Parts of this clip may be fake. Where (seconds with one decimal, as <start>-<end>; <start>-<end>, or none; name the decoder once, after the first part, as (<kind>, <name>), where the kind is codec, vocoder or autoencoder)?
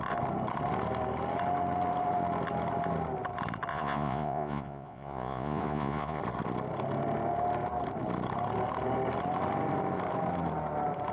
3.7-6.2 (vocoder, Vocos)